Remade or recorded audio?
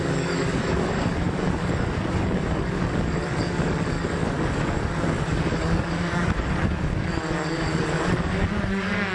remade